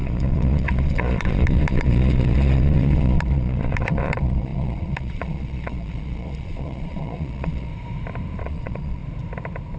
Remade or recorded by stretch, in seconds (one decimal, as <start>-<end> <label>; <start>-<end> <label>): 0.0-7.7 remade; 7.7-8.4 recorded; 8.4-9.0 remade; 9.0-9.8 recorded